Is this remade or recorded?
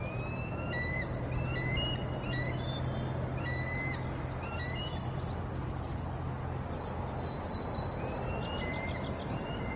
recorded